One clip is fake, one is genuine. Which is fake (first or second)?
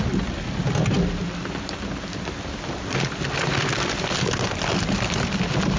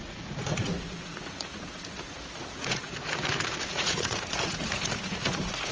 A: second